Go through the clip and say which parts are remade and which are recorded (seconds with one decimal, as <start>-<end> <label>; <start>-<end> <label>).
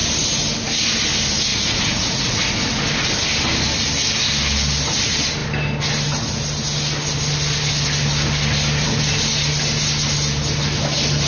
0.0-1.5 recorded; 1.5-2.4 remade; 2.4-11.3 recorded